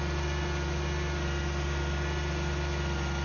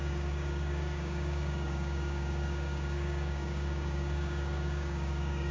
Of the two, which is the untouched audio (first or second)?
first